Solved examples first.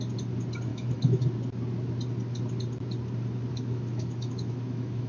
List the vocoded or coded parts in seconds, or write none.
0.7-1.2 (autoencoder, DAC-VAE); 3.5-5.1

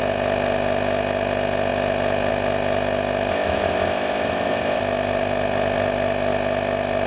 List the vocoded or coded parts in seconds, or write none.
3.3-4.8 (codec, ZipCodec)

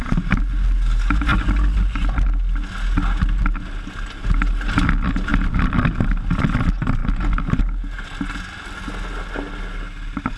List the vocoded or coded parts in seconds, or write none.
none

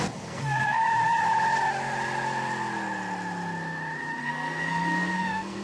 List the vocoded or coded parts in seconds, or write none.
0.0-0.8 (codec, SNAC); 4.2-5.6

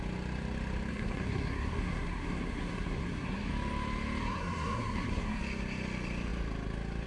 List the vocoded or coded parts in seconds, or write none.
0.9-3.5 (codec, SNAC); 4.2-5.4